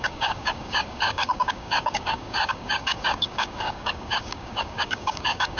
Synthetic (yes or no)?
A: yes